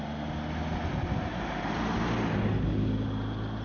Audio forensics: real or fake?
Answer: real